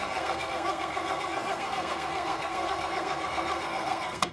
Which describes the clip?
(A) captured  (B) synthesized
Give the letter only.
B